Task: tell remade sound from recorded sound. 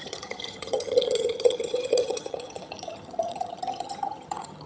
remade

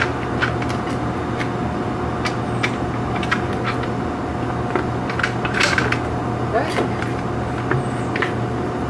recorded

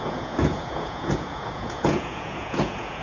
remade